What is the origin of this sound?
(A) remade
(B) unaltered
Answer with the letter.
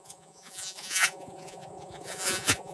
A